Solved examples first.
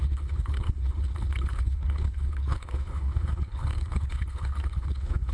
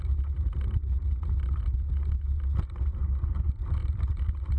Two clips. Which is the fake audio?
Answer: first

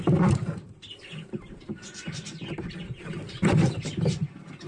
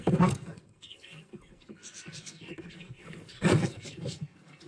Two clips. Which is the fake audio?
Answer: second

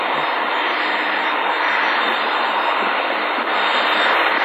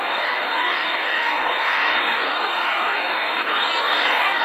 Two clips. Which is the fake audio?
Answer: second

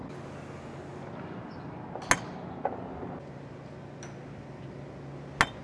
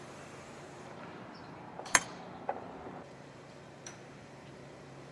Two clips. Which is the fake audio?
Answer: second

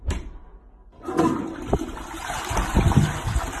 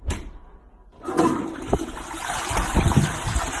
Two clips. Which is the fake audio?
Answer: second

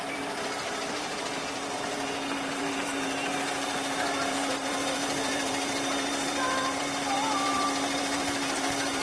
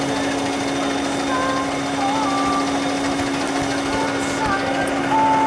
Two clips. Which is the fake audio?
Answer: first